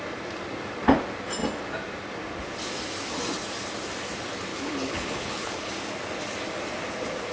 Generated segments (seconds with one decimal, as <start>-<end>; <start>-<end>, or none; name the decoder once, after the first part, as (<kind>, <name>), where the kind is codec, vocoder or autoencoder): 4.5-5.7 (codec, HILCodec)